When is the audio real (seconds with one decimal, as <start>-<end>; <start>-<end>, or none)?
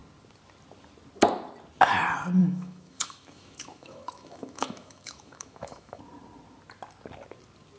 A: 0.0-2.4; 6.0-7.8